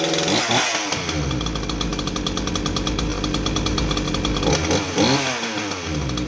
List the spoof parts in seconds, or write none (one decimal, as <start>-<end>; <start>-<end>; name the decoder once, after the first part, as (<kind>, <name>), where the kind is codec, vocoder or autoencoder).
none